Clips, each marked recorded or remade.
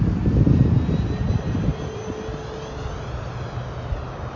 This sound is recorded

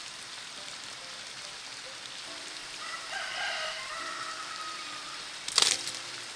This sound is remade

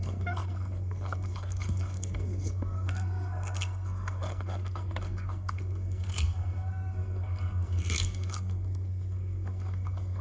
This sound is remade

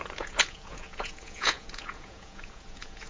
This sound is remade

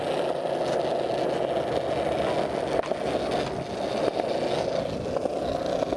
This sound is recorded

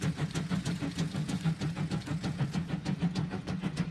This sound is remade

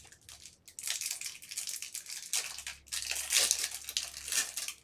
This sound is recorded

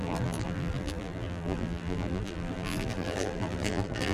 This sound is remade